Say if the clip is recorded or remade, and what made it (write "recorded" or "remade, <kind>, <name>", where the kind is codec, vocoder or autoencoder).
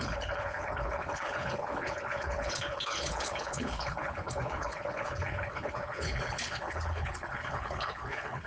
remade, codec, HILCodec